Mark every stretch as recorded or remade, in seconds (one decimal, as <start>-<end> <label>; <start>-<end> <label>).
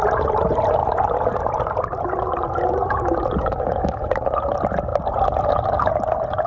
0.0-6.5 recorded